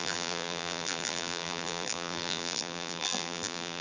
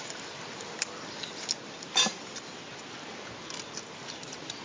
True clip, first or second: second